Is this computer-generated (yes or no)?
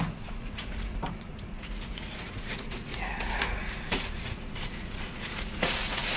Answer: yes